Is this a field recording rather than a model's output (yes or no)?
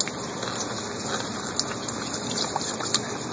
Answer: yes